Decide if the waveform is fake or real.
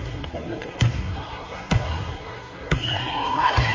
fake